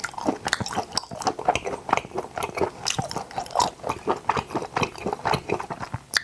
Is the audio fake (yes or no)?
no